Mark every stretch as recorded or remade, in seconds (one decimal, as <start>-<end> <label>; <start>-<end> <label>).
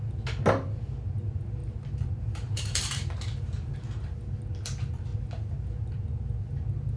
0.0-1.6 recorded; 1.6-3.4 remade; 3.4-7.0 recorded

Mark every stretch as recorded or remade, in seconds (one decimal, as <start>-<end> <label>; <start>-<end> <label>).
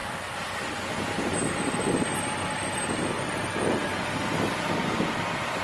0.0-2.6 recorded; 2.6-5.6 remade